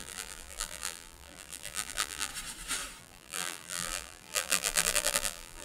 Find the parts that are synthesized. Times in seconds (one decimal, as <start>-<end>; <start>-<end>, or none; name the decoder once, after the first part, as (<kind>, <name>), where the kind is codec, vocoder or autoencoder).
0.0-2.3 (vocoder, BigVGAN v2); 3.0-5.6